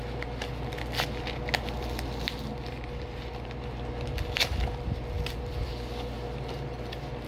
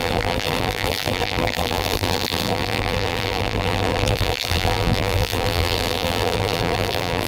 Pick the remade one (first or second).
second